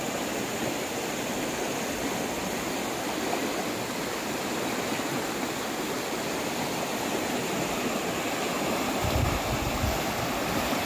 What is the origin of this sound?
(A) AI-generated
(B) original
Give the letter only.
B